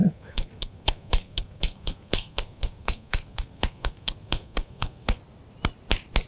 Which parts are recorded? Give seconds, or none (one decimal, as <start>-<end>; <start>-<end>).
5.2-6.3

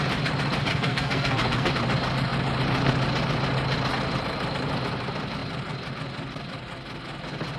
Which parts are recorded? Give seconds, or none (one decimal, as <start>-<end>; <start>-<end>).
0.0-0.7; 1.7-7.6

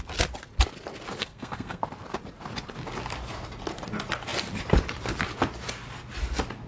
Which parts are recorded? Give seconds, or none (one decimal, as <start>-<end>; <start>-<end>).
0.0-1.2; 1.8-6.7

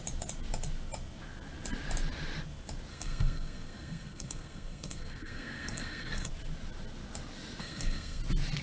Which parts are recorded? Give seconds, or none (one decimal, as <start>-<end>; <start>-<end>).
0.0-2.9; 6.3-7.6; 8.2-8.6